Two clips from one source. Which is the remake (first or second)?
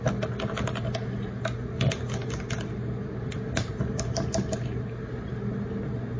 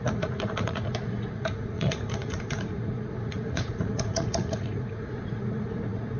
second